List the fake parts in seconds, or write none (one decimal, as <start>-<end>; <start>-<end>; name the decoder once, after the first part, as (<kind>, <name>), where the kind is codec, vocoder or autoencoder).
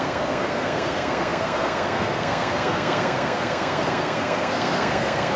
0.0-5.4 (codec, SNAC)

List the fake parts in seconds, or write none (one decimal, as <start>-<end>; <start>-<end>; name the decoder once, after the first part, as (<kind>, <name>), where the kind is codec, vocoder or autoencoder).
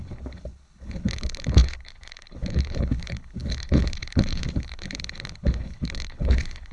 0.0-6.7 (codec, HILCodec)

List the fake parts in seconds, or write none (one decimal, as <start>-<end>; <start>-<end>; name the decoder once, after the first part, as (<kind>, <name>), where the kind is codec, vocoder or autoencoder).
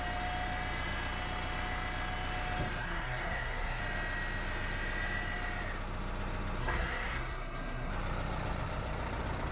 2.8-3.8 (codec, SNAC); 6.6-7.9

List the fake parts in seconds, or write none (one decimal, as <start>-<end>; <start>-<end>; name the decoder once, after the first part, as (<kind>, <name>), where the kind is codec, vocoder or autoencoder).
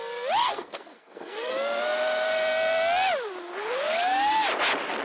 0.4-1.5 (codec, SNAC)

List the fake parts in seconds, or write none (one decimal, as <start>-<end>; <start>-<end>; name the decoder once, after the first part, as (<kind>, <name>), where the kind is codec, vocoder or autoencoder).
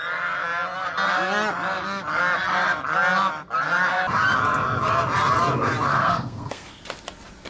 5.9-6.8 (codec, SNAC)